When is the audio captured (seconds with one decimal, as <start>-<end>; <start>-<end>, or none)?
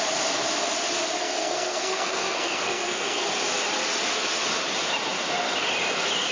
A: 0.0-1.2; 3.3-6.3